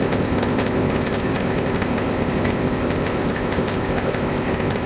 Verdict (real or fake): fake